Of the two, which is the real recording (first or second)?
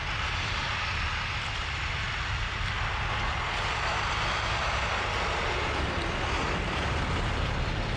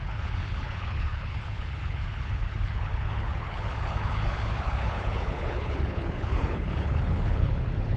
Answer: first